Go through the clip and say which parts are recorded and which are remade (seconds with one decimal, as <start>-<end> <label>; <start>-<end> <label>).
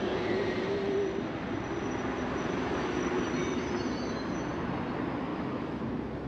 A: 0.0-5.3 recorded; 5.3-5.8 remade; 5.8-6.3 recorded